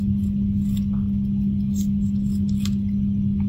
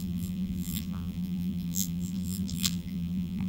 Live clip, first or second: first